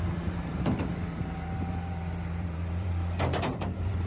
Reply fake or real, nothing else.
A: fake